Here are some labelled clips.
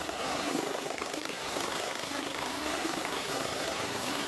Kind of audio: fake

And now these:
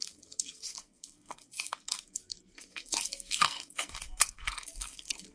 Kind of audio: fake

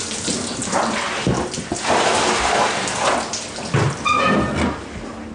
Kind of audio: real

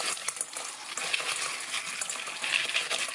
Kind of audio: real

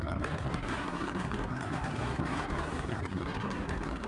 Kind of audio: fake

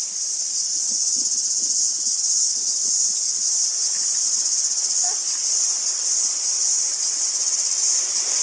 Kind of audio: real